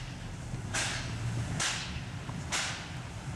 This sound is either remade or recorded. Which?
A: recorded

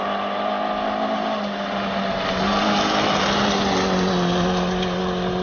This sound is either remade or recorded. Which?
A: recorded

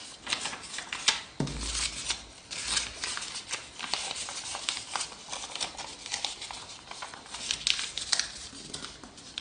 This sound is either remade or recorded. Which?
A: recorded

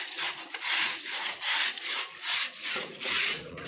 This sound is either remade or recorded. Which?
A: remade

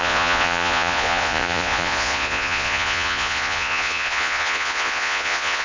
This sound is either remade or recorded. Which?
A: remade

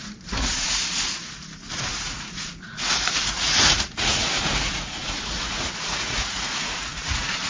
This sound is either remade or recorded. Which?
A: remade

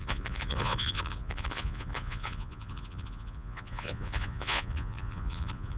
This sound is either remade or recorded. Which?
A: remade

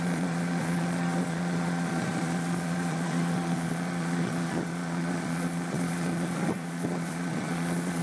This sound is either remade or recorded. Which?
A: remade